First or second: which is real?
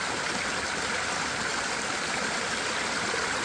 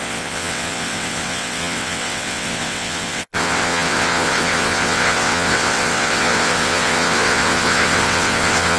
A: first